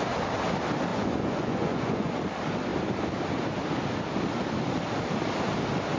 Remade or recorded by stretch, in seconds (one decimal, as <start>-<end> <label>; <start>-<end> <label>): 0.0-0.9 recorded; 0.9-2.2 remade; 2.2-6.0 recorded